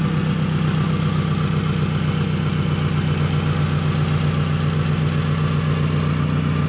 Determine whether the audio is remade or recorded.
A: recorded